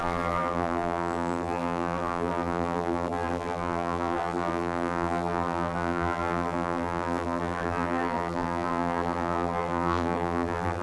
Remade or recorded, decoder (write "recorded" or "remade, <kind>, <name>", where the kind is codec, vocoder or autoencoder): remade, vocoder, BigVGAN v2